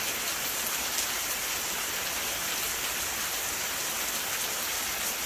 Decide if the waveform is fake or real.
real